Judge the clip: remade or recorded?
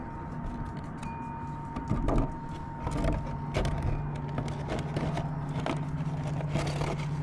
recorded